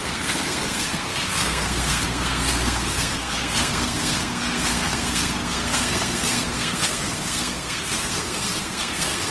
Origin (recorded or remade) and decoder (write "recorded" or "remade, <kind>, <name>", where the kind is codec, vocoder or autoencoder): remade, codec, SNAC